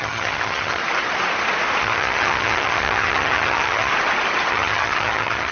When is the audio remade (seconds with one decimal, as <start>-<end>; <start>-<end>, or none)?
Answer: 0.0-0.8; 1.8-3.9; 4.5-5.5